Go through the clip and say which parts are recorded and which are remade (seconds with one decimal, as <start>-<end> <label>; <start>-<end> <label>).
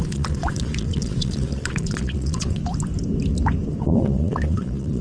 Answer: 0.0-2.6 remade; 2.6-3.8 recorded; 3.8-5.0 remade